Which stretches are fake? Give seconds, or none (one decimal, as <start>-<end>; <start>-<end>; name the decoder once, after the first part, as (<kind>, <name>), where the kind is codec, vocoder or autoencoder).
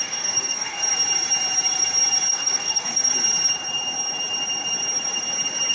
0.0-0.8 (codec, DAC); 2.3-3.1